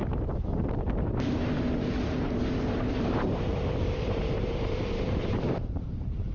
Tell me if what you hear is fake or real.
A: fake